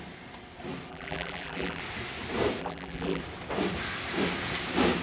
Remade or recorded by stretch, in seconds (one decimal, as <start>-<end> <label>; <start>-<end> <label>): 0.0-0.9 recorded; 0.9-1.8 remade; 1.8-2.6 recorded; 2.6-3.2 remade; 3.2-5.0 recorded